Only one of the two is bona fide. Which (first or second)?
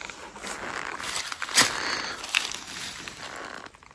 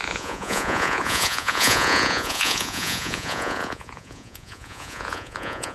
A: first